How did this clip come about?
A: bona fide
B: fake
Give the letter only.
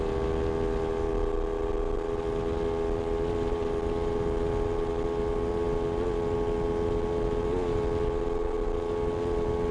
A